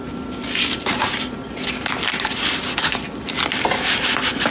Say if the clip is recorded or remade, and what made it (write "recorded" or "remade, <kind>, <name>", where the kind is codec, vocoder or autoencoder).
remade, vocoder, BigVGAN v2